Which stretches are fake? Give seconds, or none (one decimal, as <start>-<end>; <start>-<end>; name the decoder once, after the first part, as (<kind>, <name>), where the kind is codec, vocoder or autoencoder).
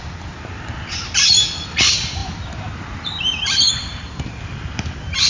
none